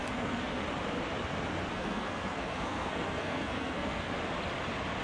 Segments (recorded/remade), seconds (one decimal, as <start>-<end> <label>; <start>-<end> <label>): 0.0-0.6 remade; 0.6-1.7 recorded; 1.7-4.1 remade; 4.1-5.0 recorded